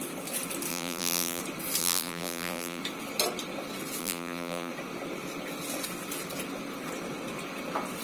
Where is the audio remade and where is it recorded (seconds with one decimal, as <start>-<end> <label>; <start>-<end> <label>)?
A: 0.0-0.7 recorded; 0.7-1.4 remade; 1.4-1.8 recorded; 1.8-2.8 remade; 2.8-4.0 recorded; 4.0-4.7 remade; 4.7-8.0 recorded